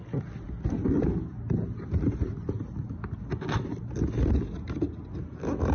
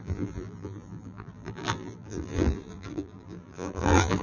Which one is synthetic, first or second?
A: second